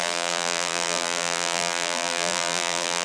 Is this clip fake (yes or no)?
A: yes